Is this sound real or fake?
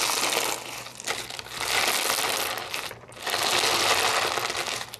real